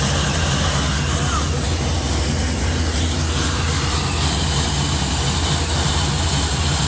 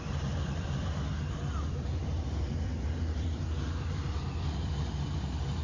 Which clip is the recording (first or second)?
first